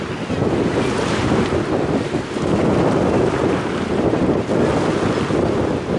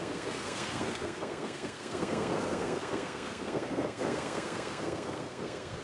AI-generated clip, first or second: second